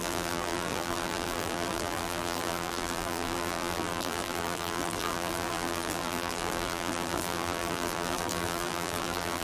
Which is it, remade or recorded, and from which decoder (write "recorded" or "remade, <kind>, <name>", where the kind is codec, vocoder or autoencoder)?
remade, vocoder, BigVGAN v2